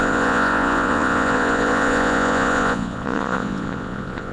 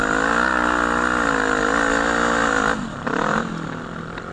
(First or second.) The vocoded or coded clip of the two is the first